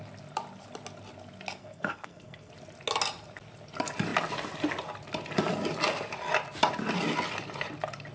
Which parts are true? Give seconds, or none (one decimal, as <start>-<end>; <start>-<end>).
0.0-1.6; 2.5-8.1